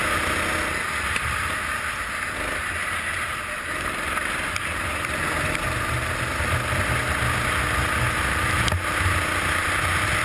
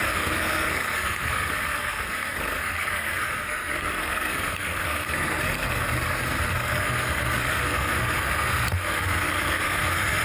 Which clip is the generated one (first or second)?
second